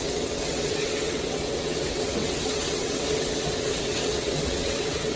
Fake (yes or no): yes